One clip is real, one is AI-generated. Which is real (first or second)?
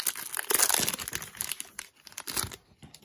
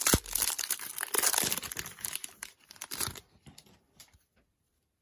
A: first